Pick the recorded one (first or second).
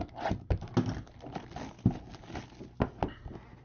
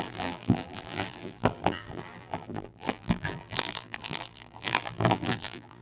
first